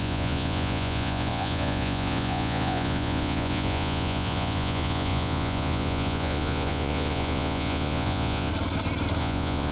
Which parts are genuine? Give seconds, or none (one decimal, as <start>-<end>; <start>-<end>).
8.5-9.2